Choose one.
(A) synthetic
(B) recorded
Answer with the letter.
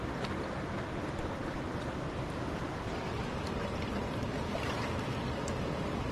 B